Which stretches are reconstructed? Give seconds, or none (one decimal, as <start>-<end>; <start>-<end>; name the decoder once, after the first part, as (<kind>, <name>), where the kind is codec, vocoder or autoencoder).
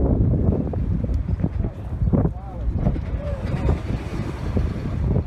1.2-4.4 (vocoder, BigVGAN v2)